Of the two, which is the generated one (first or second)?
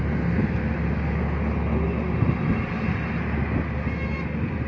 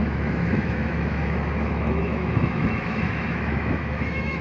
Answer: second